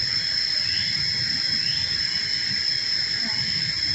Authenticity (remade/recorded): recorded